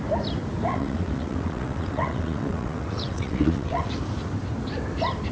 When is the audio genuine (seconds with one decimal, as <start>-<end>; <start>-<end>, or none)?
0.0-0.7; 3.9-5.3